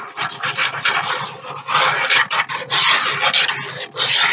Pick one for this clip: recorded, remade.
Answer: recorded